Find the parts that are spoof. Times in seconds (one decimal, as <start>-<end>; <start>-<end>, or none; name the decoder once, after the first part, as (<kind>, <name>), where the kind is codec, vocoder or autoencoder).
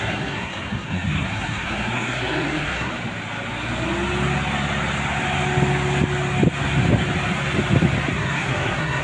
0.0-2.9 (codec, SNAC); 8.1-9.0